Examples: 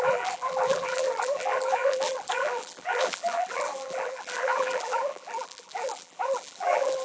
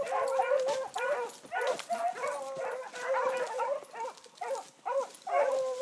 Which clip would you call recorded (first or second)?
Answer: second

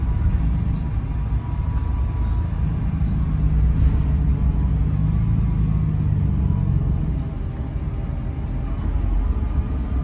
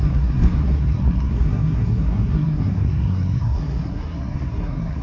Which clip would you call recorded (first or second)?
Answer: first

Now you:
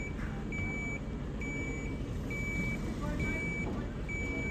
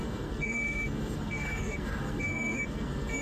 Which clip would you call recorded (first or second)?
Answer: first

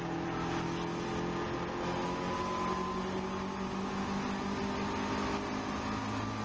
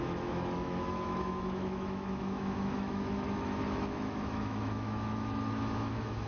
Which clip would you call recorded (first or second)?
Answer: first